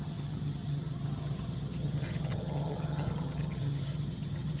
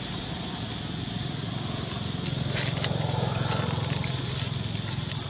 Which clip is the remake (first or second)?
first